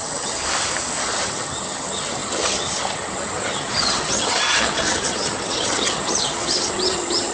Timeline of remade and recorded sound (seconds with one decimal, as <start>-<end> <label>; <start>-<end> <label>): 0.0-0.4 remade; 0.4-1.0 recorded; 1.0-7.3 remade